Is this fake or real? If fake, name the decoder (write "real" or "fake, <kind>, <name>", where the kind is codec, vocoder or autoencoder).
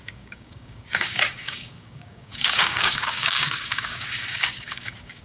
fake, codec, DAC